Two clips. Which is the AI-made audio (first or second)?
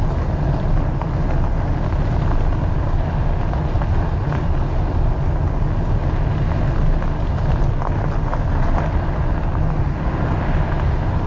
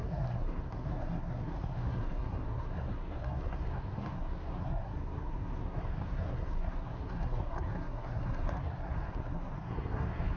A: second